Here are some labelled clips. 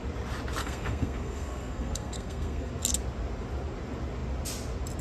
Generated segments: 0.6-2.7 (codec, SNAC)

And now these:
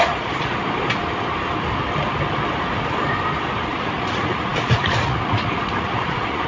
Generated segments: 0.0-0.6 (vocoder, Vocos); 3.7-6.5

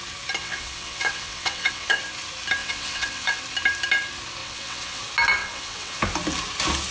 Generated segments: 0.4-2.0 (vocoder, WaveNeXt); 2.6-3.4; 4.4-5.0; 5.4-6.0

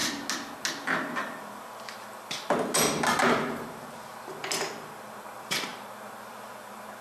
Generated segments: none

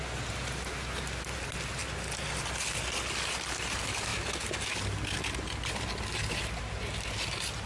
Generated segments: none

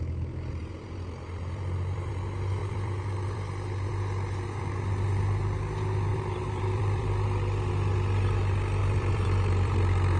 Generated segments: 0.6-2.1 (vocoder, BigVGAN v2); 2.6-3.9; 6.1-7.7; 8.8-10.2